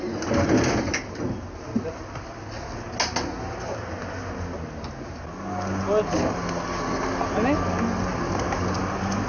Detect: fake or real real